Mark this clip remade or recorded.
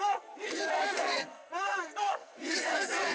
remade